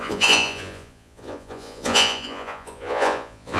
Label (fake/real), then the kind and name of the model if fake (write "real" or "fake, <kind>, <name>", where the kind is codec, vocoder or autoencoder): fake, vocoder, Vocos